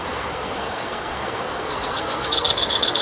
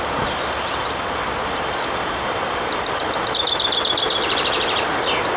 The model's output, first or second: first